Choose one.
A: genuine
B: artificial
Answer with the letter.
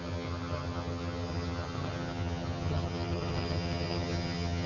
B